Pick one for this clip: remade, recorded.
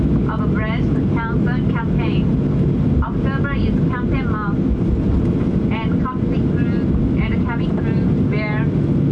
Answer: recorded